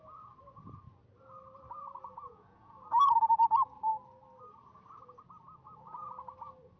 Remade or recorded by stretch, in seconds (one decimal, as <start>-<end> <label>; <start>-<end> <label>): 0.0-1.8 recorded; 1.8-2.9 remade; 2.9-6.8 recorded